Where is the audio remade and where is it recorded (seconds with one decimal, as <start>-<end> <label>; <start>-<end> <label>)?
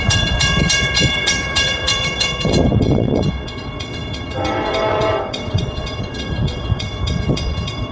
0.0-7.9 remade